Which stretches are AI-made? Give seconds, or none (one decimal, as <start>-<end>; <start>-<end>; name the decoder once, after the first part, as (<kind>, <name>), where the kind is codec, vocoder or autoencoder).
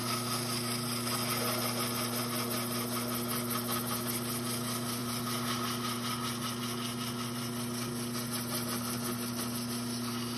none